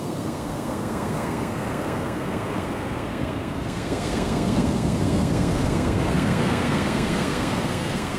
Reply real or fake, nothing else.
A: fake